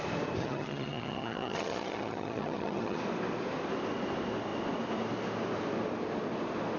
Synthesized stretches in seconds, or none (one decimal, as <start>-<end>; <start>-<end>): 0.4-3.0